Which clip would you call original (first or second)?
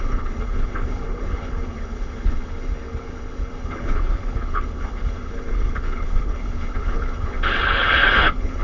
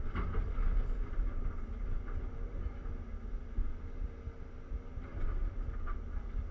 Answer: second